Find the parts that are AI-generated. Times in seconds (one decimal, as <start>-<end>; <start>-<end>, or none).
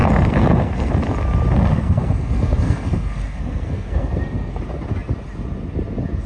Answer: 0.0-0.9; 1.7-4.6